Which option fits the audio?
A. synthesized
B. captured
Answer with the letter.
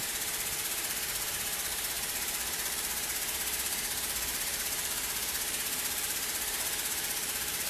A